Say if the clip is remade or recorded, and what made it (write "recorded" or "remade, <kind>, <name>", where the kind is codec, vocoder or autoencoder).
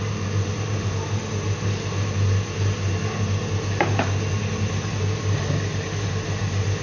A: recorded